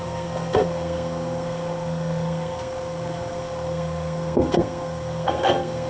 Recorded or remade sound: remade